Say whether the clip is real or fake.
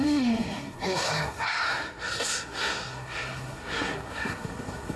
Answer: fake